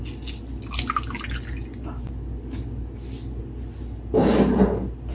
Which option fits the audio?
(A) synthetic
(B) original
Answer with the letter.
B